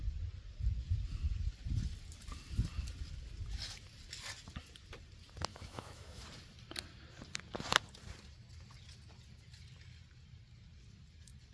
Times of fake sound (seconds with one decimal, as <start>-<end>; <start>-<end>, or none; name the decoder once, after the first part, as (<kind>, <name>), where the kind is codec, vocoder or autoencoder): 5.5-6.2 (autoencoder, DAC-VAE)